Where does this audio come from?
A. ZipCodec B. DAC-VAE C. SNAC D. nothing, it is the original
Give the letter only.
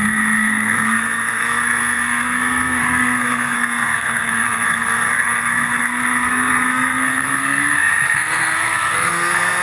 C